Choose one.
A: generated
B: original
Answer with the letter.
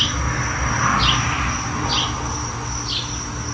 B